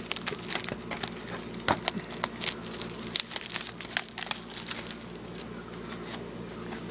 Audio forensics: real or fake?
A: real